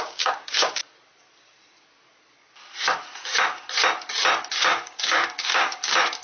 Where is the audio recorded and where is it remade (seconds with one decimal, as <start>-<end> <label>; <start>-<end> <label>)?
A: 0.0-0.8 remade; 0.8-4.5 recorded; 4.5-6.2 remade